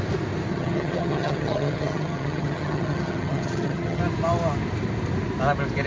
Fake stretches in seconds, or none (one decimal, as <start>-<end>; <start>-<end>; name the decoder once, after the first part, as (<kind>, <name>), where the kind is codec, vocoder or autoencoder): 0.5-4.0 (vocoder, HiFi-GAN)